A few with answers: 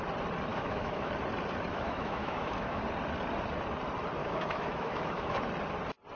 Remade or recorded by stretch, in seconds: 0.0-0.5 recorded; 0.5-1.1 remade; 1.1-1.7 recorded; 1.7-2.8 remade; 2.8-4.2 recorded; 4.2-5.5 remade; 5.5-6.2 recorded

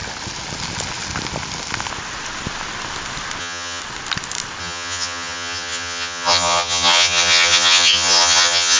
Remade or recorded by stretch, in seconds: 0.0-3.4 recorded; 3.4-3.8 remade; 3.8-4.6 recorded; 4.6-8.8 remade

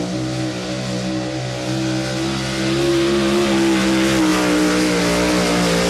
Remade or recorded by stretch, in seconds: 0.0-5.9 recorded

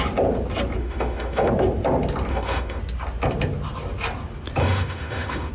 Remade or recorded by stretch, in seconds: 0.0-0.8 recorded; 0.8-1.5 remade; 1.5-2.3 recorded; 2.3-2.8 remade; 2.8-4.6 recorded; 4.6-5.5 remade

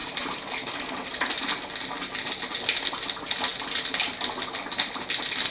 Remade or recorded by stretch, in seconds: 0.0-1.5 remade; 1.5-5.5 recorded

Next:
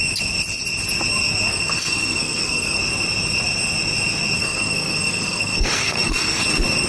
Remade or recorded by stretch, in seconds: 0.0-1.5 recorded; 1.5-2.8 remade; 2.8-4.4 recorded; 4.4-6.4 remade; 6.4-6.9 recorded

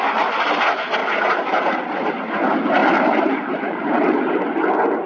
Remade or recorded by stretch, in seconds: 0.0-1.0 recorded; 1.0-1.6 remade; 1.6-2.8 recorded; 2.8-4.4 remade; 4.4-5.1 recorded

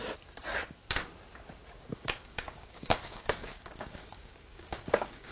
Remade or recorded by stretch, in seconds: 0.0-1.9 recorded; 1.9-5.3 remade